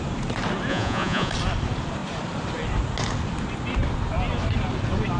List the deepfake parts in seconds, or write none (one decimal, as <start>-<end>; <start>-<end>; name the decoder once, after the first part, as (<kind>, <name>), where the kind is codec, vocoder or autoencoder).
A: 0.7-1.3 (vocoder, Vocos)